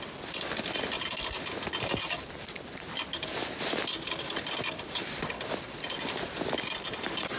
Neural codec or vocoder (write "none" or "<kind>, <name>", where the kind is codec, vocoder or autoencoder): none